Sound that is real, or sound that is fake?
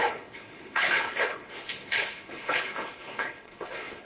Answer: fake